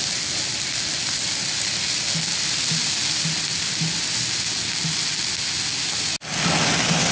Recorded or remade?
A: recorded